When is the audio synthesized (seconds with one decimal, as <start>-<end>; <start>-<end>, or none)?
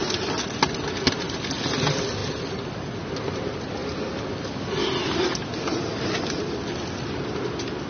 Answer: none